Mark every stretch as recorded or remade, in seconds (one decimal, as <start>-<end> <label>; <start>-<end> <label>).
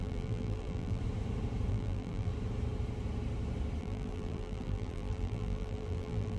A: 0.0-1.0 remade; 1.0-1.7 recorded; 1.7-2.3 remade; 2.3-3.8 recorded; 3.8-6.4 remade